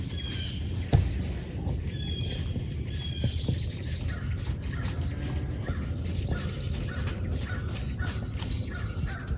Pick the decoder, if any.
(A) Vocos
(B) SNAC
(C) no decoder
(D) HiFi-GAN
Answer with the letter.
C